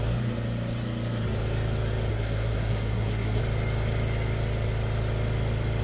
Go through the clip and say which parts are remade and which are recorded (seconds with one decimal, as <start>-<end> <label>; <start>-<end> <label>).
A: 0.0-2.1 recorded; 2.1-3.4 remade; 3.4-5.8 recorded